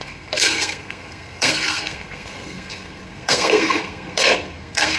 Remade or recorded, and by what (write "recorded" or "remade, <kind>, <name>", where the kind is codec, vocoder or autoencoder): remade, codec, SNAC